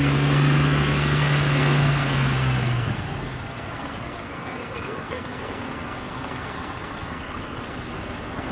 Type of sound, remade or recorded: remade